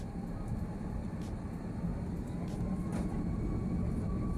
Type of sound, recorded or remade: recorded